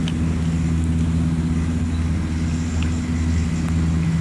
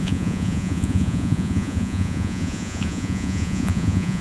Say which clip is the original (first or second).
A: first